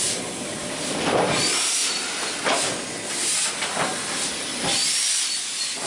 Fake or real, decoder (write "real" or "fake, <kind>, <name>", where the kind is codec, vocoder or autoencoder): real